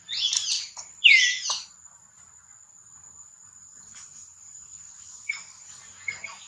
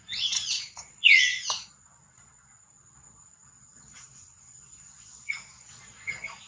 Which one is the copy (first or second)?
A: second